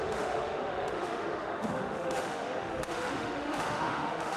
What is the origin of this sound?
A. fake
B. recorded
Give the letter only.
A